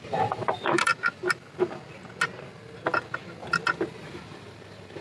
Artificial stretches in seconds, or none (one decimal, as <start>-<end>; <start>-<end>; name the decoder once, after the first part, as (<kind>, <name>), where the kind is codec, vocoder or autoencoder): 0.0-0.9 (vocoder, BigVGAN v2); 3.9-5.0

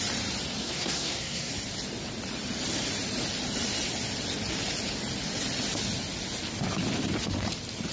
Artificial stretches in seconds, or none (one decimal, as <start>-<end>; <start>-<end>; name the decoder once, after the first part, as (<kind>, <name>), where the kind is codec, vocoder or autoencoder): 0.6-1.5 (codec, SNAC)